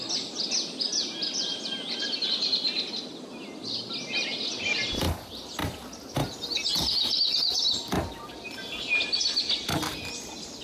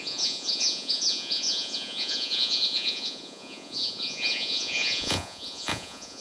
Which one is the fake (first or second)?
second